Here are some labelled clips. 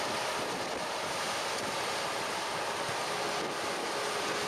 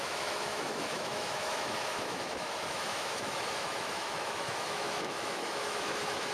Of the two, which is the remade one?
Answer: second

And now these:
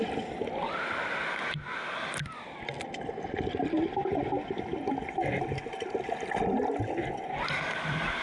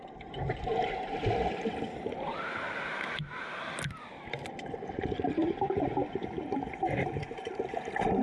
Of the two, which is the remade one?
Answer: second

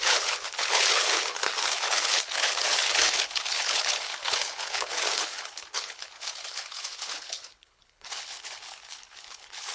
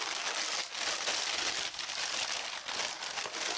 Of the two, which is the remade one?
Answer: first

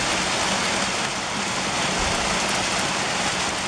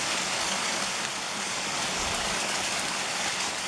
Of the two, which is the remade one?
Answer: second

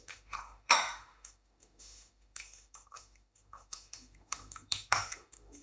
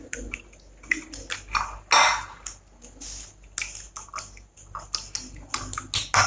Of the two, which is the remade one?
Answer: first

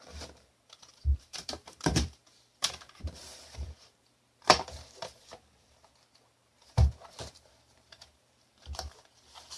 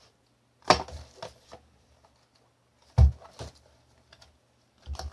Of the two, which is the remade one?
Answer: first